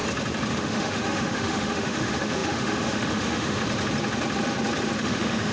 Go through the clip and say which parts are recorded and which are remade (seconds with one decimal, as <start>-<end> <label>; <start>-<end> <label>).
0.0-0.5 recorded; 0.5-3.6 remade; 3.6-5.0 recorded; 5.0-5.5 remade